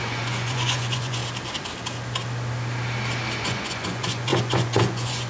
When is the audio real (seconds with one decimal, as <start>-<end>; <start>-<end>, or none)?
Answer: 1.2-3.4